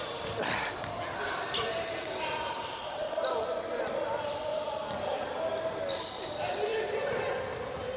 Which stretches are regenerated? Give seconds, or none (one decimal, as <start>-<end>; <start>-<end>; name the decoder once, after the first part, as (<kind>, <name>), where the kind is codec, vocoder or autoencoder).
none